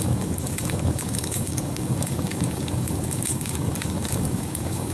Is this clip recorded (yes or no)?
no